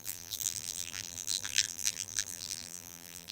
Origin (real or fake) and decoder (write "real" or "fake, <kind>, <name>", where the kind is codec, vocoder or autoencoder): fake, vocoder, BigVGAN v2